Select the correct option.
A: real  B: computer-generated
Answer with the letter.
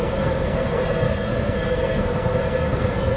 B